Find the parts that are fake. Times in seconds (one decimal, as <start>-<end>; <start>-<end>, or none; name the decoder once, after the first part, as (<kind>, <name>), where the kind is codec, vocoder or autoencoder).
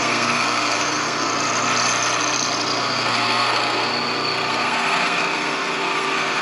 0.0-1.3 (codec, SNAC); 2.8-3.9; 4.5-6.4